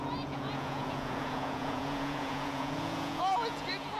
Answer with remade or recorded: remade